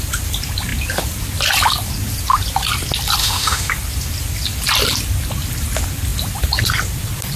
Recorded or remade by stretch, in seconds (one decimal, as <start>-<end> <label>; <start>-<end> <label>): 0.0-3.2 recorded; 3.2-3.7 remade; 3.7-7.4 recorded